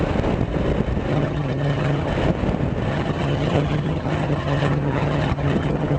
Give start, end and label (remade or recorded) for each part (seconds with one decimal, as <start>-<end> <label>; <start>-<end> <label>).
0.0-1.1 recorded; 1.1-2.1 remade; 2.1-2.9 recorded; 2.9-6.0 remade